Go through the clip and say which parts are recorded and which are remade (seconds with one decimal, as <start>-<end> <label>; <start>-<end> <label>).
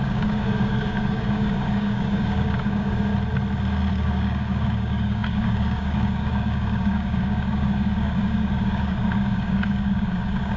0.0-3.1 remade; 3.1-3.9 recorded; 3.9-10.6 remade